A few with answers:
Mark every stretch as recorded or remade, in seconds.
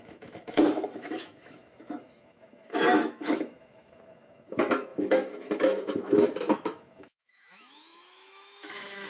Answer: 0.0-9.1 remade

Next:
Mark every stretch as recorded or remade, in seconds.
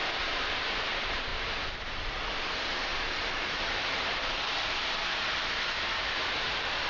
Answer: 0.0-1.3 remade; 1.3-2.4 recorded; 2.4-6.9 remade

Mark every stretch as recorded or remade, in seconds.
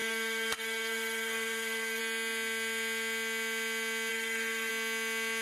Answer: 0.0-2.0 remade; 2.0-4.1 recorded; 4.1-4.7 remade; 4.7-5.4 recorded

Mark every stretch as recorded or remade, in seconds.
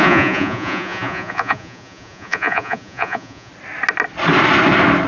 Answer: 0.0-3.5 remade; 3.5-5.1 recorded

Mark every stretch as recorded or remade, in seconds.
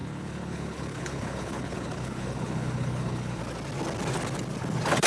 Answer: 0.0-3.4 remade; 3.4-5.1 recorded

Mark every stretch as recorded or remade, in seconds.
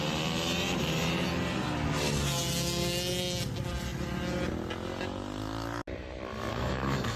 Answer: 0.0-6.5 recorded; 6.5-7.2 remade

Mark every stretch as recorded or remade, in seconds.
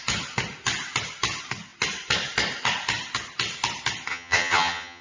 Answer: 0.0-4.1 recorded; 4.1-5.0 remade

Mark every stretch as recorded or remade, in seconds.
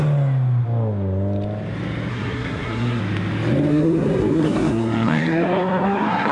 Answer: 0.0-2.1 recorded; 2.1-3.0 remade; 3.0-3.7 recorded; 3.7-6.3 remade